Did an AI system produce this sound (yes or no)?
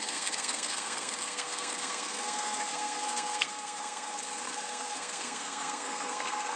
yes